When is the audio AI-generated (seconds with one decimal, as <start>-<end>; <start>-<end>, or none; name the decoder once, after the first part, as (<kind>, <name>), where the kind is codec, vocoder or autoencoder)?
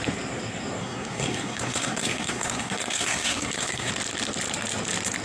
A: 0.8-3.9 (codec, SNAC)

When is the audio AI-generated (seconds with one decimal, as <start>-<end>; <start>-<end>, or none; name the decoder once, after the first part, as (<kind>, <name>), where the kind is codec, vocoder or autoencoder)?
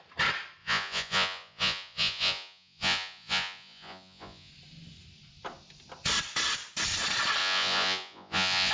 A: 0.6-4.5 (vocoder, Vocos); 7.4-8.7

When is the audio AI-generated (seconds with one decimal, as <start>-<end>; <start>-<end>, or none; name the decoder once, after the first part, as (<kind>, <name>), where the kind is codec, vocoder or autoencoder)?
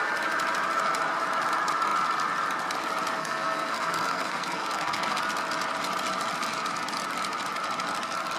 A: 3.2-5.2 (codec, SNAC)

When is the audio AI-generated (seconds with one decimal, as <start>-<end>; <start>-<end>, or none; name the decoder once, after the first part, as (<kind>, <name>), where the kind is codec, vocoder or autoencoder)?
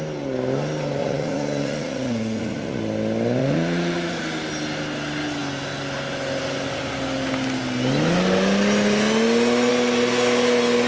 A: 1.0-2.8 (vocoder, Vocos); 3.4-4.2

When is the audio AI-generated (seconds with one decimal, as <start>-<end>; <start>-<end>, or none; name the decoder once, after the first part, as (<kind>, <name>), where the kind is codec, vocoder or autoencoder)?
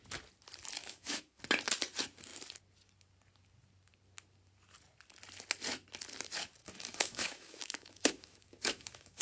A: 0.8-1.4 (autoencoder, DAC-VAE); 6.6-9.2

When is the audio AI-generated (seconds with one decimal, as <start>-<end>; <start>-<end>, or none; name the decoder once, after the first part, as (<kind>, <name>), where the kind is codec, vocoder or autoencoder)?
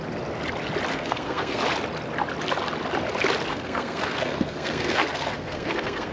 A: 0.9-1.6 (codec, SNAC); 3.5-6.1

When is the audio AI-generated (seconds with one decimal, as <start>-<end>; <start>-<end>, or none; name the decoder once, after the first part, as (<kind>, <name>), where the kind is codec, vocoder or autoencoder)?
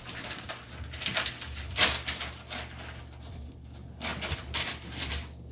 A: none